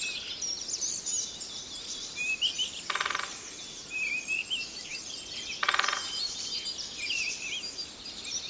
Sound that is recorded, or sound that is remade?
remade